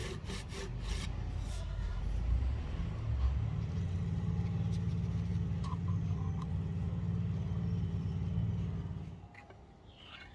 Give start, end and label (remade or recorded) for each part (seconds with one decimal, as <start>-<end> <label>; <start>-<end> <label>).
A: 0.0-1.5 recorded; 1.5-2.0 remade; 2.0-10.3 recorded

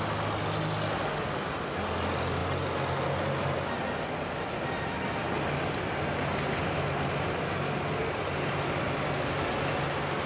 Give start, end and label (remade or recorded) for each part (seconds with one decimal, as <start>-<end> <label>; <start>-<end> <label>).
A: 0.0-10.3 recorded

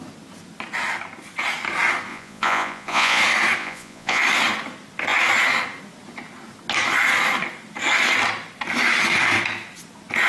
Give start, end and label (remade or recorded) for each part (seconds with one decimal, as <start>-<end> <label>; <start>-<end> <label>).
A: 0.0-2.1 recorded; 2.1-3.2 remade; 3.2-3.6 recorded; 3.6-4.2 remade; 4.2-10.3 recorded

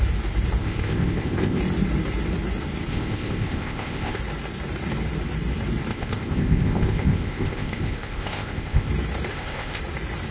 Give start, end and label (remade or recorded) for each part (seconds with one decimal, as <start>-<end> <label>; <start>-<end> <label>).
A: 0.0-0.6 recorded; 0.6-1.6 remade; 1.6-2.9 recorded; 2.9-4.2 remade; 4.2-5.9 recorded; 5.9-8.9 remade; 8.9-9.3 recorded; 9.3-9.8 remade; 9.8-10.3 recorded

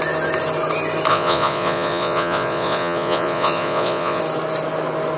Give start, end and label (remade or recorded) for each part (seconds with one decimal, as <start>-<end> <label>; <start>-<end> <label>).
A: 0.0-1.1 recorded; 1.1-4.2 remade; 4.2-5.2 recorded

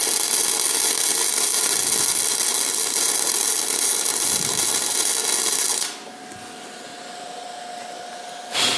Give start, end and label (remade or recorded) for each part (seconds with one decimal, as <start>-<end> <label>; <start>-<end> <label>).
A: 0.0-8.8 recorded